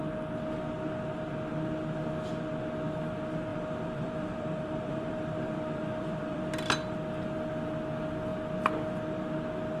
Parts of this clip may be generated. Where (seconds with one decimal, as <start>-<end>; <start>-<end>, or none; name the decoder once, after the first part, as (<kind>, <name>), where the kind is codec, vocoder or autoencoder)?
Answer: 3.5-6.4 (vocoder, BigVGAN v2)

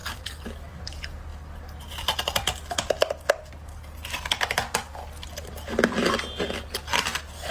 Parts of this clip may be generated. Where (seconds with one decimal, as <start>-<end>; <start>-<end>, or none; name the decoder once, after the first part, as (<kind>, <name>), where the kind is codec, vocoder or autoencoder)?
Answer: 0.0-0.8 (vocoder, BigVGAN v2)

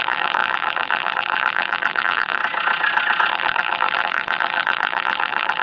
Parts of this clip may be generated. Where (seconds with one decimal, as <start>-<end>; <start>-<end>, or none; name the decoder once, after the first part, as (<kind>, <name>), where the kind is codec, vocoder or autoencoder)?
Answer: 0.0-2.4 (vocoder, BigVGAN v2); 3.3-5.6

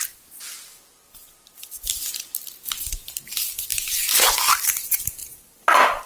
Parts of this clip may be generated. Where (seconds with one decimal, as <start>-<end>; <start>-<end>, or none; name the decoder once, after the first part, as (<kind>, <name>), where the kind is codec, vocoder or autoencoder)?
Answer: none

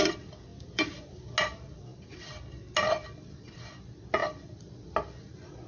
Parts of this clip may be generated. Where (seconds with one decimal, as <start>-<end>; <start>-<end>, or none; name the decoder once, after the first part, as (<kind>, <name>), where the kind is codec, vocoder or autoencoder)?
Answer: 0.5-1.2 (vocoder, BigVGAN v2)

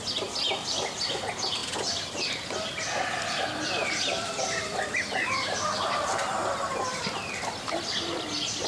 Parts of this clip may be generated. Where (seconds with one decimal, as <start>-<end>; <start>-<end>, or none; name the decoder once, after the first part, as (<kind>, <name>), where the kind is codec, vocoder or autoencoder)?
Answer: 0.0-1.6 (vocoder, BigVGAN v2); 3.3-8.7

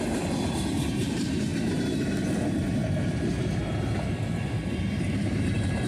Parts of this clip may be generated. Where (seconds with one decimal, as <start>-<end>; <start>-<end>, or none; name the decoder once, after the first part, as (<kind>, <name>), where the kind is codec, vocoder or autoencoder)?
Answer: 0.0-1.5 (vocoder, BigVGAN v2); 5.0-5.9

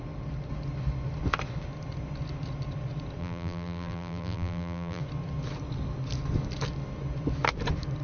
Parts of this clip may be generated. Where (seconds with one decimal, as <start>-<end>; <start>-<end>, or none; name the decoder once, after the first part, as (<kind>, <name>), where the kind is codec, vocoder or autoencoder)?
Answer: 3.2-5.0 (vocoder, BigVGAN v2)